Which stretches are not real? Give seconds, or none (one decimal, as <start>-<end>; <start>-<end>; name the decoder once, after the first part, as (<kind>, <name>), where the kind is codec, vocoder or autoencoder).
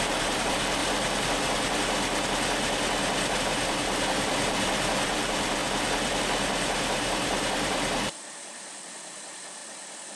0.0-0.8 (vocoder, BigVGAN v2); 3.4-5.6; 6.2-9.6